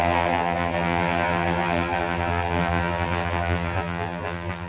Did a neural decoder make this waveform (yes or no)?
yes